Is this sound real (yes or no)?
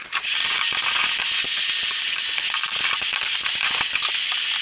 yes